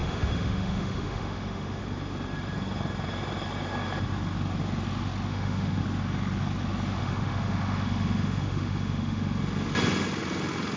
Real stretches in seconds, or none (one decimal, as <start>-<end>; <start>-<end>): 1.8-5.3; 5.8-7.0; 9.4-10.8